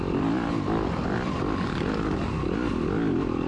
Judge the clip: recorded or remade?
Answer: recorded